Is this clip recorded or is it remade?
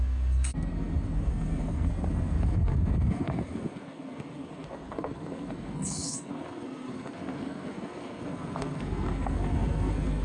remade